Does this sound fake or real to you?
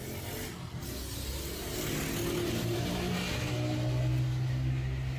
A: real